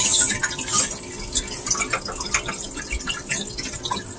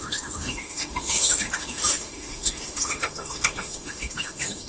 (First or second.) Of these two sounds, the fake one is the second